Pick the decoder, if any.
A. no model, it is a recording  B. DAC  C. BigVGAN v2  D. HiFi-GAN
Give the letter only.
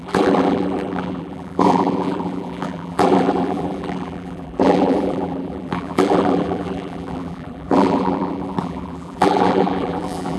C